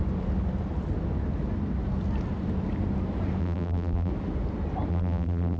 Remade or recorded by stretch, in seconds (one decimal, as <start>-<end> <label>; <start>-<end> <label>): 0.0-3.4 recorded; 3.4-4.1 remade; 4.1-4.9 recorded; 4.9-5.6 remade